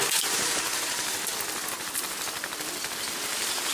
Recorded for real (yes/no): yes